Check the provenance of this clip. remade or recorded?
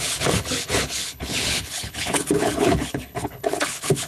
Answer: remade